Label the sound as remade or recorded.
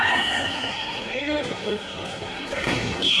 remade